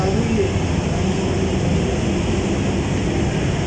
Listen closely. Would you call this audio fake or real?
real